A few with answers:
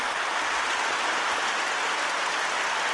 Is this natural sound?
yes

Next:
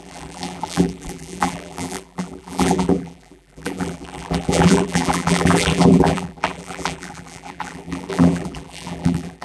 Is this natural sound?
no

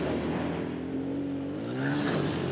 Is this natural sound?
yes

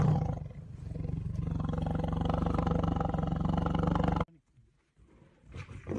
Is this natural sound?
yes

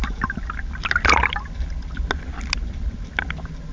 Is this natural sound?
yes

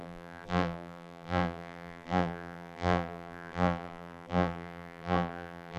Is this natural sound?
no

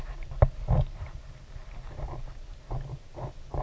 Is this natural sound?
yes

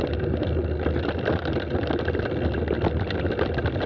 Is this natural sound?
yes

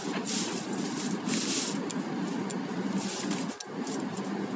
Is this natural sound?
no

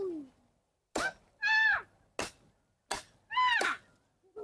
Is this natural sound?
yes